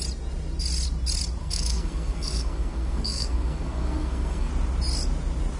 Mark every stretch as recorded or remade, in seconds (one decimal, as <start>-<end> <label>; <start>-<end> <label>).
0.0-1.4 recorded; 1.4-4.5 remade; 4.5-5.6 recorded